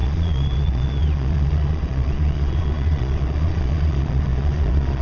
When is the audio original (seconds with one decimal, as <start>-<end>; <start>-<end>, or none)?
none